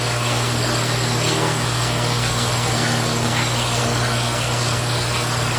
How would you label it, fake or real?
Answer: fake